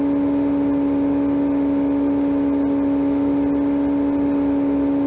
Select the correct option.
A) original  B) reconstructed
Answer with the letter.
A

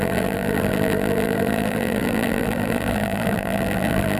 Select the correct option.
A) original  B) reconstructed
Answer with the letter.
B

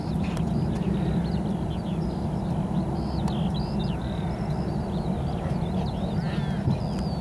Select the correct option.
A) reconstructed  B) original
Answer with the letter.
B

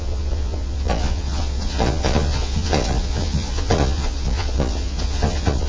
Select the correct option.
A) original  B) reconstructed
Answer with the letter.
B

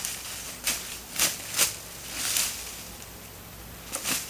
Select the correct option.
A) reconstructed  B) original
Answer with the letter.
B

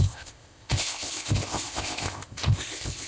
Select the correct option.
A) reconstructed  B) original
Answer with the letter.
A